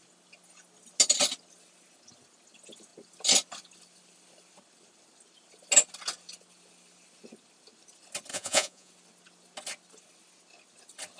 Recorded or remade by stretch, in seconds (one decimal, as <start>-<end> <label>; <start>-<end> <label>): 0.0-8.3 recorded; 8.3-8.9 remade; 8.9-11.2 recorded